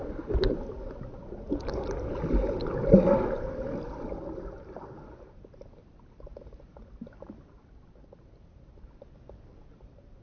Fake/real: real